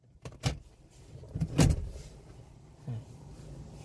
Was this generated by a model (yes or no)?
yes